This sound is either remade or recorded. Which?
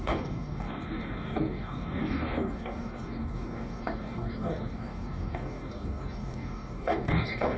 remade